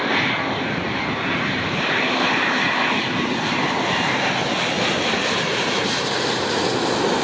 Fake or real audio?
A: real